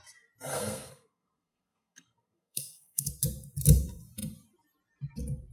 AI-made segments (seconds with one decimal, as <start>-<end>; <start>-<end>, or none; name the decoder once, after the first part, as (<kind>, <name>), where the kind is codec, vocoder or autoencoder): 0.5-3.1 (codec, SNAC)